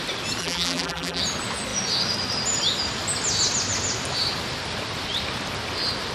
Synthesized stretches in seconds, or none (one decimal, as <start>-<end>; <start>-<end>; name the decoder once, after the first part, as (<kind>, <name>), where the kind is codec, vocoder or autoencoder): 0.4-1.2 (vocoder, BigVGAN v2)